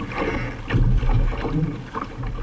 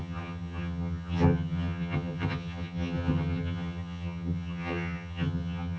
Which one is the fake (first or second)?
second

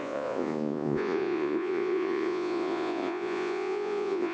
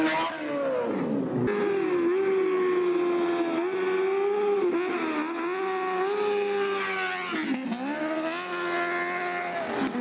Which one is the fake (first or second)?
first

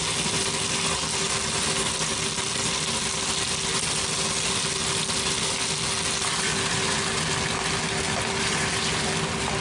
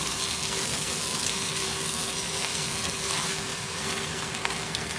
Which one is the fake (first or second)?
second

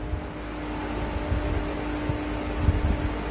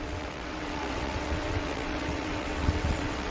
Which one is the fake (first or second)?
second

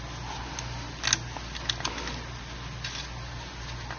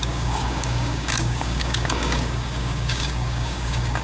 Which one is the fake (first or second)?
second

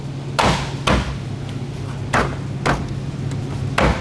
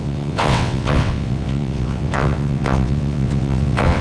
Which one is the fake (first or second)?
second